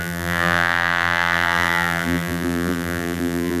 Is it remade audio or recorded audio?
remade